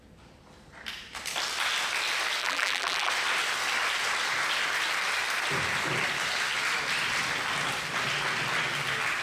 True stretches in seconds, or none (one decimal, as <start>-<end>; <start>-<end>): 0.0-2.4; 3.1-9.2